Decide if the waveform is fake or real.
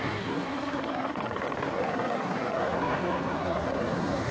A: fake